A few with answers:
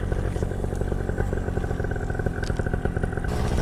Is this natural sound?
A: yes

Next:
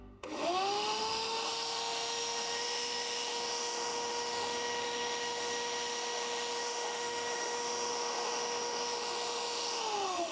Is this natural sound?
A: no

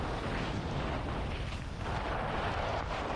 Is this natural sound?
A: yes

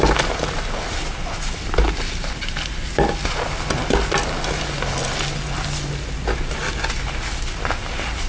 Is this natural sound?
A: yes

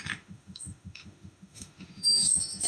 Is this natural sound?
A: no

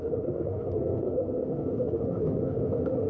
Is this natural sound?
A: no